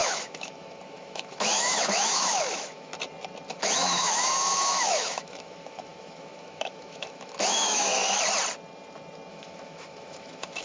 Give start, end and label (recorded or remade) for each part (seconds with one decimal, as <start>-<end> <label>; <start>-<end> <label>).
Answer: 0.0-2.9 remade; 2.9-3.5 recorded; 3.5-8.0 remade; 8.0-9.3 recorded; 9.3-10.6 remade